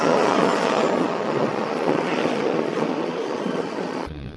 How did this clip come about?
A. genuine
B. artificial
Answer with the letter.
B